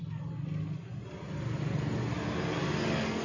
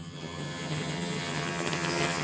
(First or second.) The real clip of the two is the first